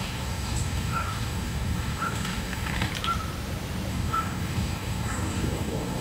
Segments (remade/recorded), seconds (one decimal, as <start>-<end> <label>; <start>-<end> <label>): 0.0-2.9 remade; 2.9-3.9 recorded; 3.9-6.0 remade